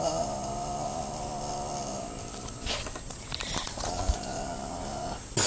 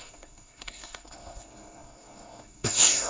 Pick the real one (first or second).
first